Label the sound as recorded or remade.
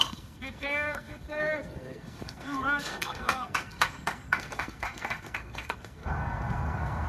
remade